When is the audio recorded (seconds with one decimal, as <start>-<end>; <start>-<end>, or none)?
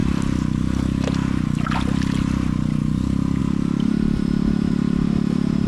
0.0-5.7